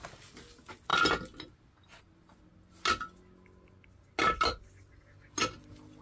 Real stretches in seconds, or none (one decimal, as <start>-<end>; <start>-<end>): 0.0-6.0